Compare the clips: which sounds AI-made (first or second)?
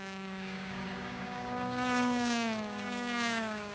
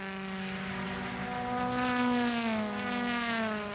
first